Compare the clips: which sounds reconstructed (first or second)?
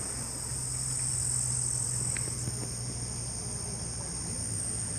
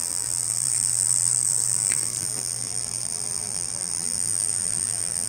second